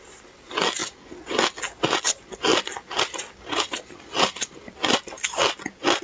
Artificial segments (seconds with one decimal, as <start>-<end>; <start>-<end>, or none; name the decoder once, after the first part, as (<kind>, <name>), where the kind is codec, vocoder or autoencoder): 2.5-5.4 (vocoder, BigVGAN v2)